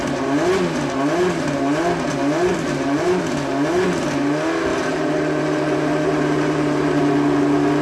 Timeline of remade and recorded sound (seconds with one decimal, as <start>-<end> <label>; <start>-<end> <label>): 0.0-2.5 recorded; 2.5-3.2 remade; 3.2-4.7 recorded; 4.7-7.0 remade; 7.0-7.8 recorded